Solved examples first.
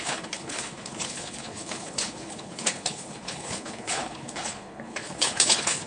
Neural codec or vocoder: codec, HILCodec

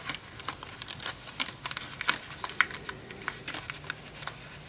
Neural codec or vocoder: none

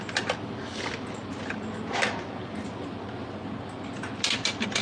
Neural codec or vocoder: none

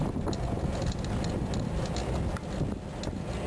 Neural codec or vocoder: none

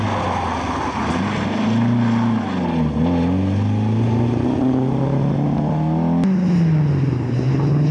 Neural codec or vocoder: none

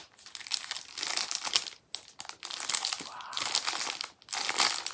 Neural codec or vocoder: none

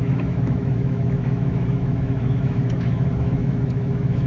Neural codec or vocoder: autoencoder, DAC-VAE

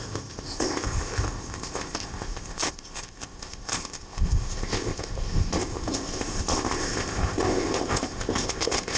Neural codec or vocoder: codec, ZipCodec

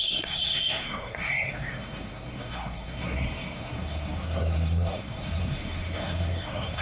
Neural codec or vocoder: codec, SNAC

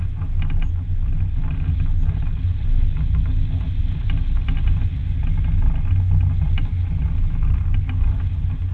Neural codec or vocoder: none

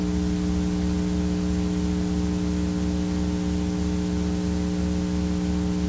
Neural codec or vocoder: none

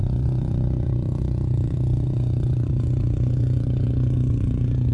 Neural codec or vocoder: vocoder, Vocos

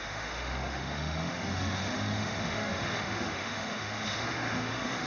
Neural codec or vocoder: autoencoder, DAC-VAE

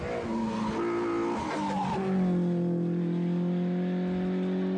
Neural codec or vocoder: none